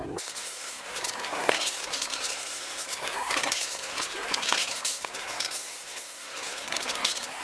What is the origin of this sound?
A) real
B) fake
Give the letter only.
B